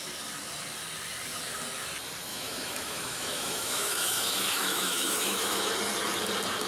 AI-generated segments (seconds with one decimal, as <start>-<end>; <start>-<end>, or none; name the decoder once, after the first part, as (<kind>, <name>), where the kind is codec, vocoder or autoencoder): 2.3-5.7 (autoencoder, DAC-VAE)